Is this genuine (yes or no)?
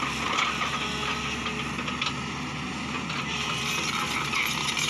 yes